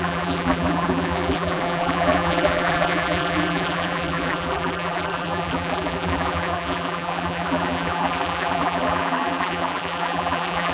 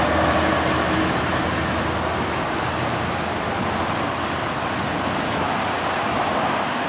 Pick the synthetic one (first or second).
first